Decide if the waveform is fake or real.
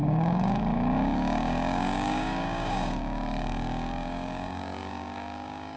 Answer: fake